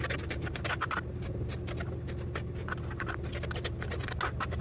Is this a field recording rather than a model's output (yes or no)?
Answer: yes